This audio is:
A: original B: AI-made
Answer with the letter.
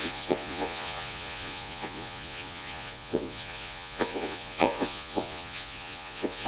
B